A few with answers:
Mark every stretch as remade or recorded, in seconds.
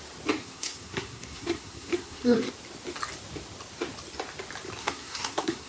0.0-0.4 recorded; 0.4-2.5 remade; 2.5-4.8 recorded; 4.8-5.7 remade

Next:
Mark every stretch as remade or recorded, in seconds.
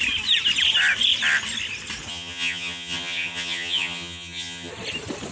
0.0-2.1 recorded; 2.1-4.7 remade; 4.7-5.3 recorded